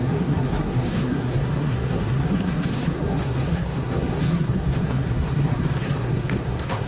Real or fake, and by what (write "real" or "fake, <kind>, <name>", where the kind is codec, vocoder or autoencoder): fake, codec, SNAC